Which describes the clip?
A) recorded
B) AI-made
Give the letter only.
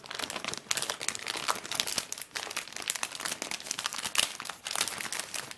A